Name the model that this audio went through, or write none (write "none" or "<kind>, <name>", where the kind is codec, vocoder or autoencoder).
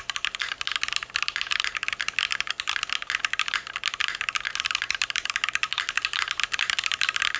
none